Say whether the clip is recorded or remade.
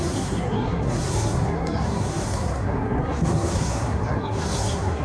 remade